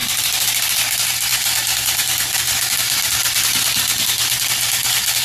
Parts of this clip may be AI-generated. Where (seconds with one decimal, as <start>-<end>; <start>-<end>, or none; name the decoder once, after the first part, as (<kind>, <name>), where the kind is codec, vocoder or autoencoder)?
none